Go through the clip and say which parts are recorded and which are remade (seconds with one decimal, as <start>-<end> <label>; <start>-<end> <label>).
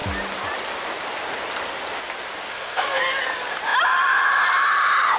0.0-2.5 recorded; 2.5-3.0 remade; 3.0-5.2 recorded